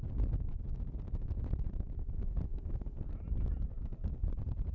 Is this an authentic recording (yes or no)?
yes